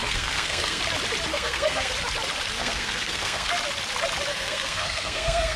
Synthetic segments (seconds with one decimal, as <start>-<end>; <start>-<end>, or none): 0.0-0.8; 1.3-1.9; 2.6-3.5; 4.3-5.6